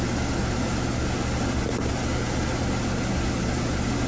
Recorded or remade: recorded